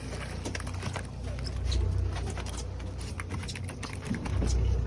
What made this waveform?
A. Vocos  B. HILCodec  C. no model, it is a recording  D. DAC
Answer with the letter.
C